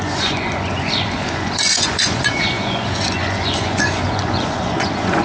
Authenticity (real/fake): fake